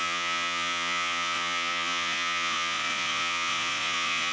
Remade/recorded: remade